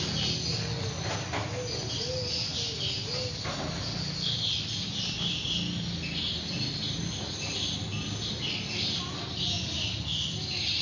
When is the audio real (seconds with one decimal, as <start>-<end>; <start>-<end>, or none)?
0.0-10.8